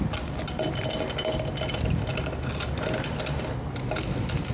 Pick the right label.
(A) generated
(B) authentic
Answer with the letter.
B